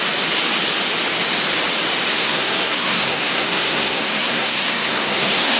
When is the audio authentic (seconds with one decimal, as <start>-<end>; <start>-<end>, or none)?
0.0-2.1